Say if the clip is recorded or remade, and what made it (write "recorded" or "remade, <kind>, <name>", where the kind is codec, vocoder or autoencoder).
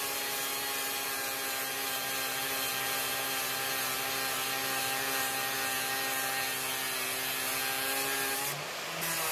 recorded